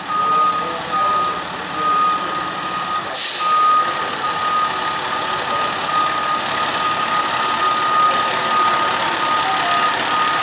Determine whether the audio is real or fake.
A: real